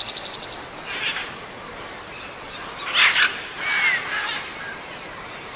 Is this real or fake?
real